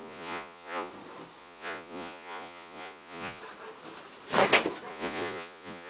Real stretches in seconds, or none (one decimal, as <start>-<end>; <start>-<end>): 0.9-1.4; 3.4-4.9